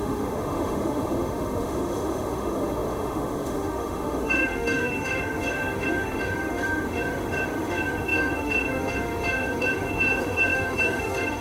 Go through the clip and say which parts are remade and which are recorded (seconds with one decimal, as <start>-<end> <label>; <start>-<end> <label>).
0.0-11.4 remade